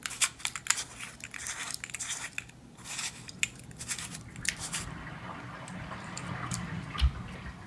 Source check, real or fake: real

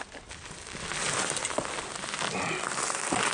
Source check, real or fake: real